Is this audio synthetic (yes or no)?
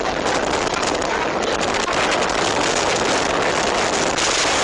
no